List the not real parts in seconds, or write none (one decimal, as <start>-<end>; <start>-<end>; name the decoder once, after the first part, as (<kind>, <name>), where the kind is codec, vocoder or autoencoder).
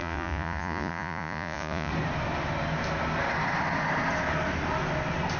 0.0-1.9 (vocoder, Vocos)